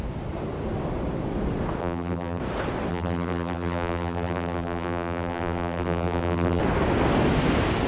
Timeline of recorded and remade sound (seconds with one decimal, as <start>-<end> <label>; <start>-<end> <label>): 0.0-1.8 recorded; 1.8-2.4 remade; 2.4-2.9 recorded; 2.9-6.6 remade; 6.6-7.9 recorded